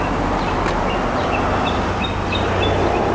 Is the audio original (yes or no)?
yes